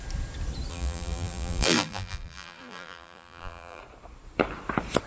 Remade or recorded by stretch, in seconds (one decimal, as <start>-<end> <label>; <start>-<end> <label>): 0.0-0.7 recorded; 0.7-3.8 remade; 3.8-5.1 recorded